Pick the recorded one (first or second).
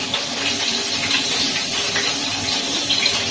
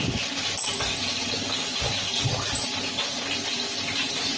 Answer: second